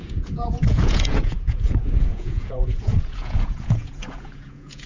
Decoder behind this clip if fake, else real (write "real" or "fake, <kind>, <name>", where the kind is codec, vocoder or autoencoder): fake, vocoder, Vocos